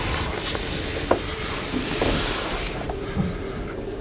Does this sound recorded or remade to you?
recorded